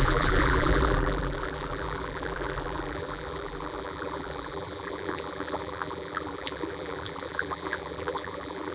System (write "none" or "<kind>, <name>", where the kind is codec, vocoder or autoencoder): vocoder, BigVGAN v2